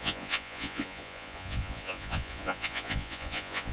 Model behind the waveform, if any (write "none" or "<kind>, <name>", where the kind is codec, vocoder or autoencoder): vocoder, Vocos